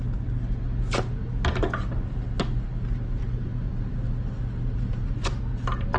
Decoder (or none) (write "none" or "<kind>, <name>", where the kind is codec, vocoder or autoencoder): none